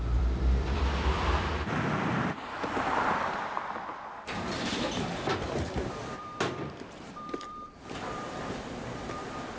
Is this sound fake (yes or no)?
yes